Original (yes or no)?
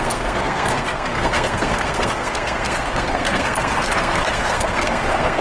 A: no